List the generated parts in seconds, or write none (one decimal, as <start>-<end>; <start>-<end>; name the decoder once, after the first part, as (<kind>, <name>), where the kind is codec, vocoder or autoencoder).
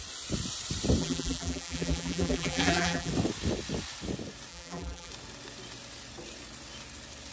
1.0-3.1 (vocoder, BigVGAN v2); 4.5-5.1